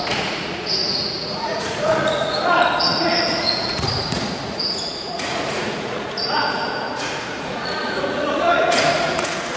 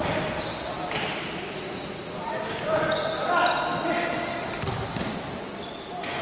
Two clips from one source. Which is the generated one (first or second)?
first